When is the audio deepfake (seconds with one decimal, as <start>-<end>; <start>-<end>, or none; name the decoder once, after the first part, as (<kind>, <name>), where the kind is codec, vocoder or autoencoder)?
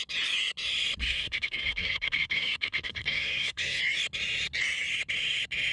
1.0-3.8 (codec, SNAC)